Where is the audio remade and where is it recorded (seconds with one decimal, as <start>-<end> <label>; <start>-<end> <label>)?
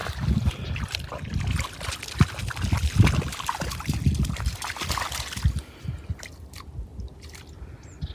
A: 0.0-8.1 recorded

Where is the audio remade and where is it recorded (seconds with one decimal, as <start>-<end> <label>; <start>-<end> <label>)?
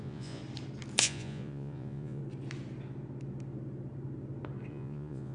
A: 0.0-0.4 remade; 0.4-1.0 recorded; 1.0-2.2 remade; 2.2-4.7 recorded; 4.7-5.3 remade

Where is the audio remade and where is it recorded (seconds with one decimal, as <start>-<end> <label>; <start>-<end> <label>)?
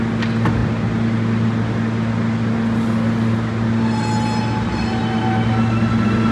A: 0.0-6.3 recorded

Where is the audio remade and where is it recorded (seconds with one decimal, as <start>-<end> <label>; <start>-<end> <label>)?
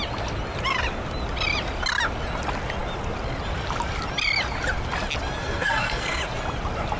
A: 0.0-5.4 recorded; 5.4-6.2 remade; 6.2-7.0 recorded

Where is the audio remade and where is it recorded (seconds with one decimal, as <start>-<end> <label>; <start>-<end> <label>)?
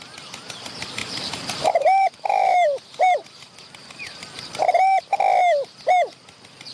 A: 0.0-1.0 recorded; 1.0-5.0 remade; 5.0-6.7 recorded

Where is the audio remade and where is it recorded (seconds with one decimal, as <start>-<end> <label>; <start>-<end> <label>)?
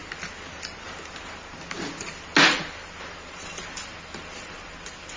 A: 0.0-3.1 recorded; 3.1-5.2 remade